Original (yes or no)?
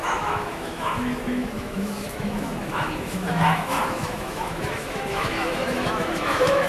no